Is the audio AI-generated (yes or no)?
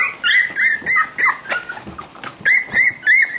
no